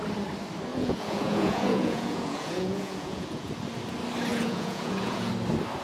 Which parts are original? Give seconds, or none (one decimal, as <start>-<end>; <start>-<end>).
0.0-0.7; 3.5-4.3; 5.3-5.8